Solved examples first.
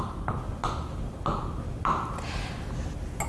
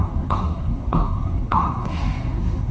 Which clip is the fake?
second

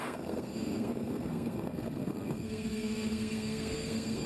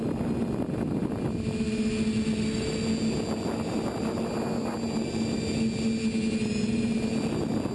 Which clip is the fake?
first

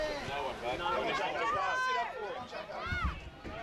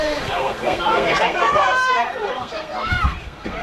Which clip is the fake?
second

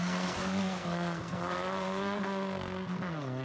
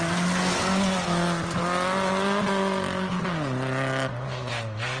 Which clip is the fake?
first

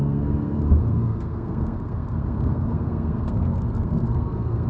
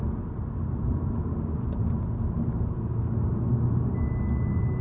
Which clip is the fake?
first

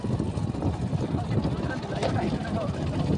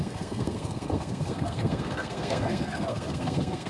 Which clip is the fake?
second